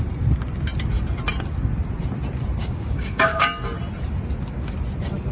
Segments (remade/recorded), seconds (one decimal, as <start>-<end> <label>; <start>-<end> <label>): 0.0-2.6 recorded; 2.6-3.4 remade; 3.4-5.3 recorded